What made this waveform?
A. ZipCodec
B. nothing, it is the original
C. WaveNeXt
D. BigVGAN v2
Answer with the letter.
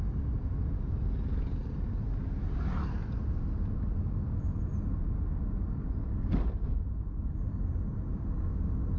B